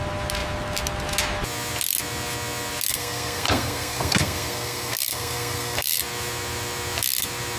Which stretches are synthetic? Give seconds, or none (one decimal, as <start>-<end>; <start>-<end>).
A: 2.9-6.0